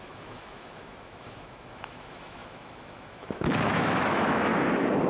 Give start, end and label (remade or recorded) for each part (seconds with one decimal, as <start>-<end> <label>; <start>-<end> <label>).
0.0-4.5 remade; 4.5-5.1 recorded